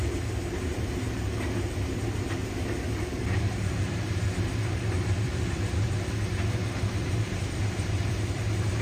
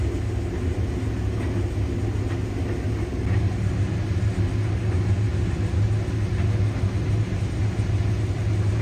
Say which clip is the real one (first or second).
second